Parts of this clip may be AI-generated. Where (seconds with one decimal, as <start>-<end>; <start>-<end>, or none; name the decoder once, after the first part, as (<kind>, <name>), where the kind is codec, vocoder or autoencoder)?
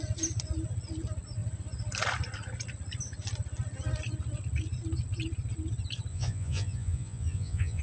6.1-7.8 (vocoder, Vocos)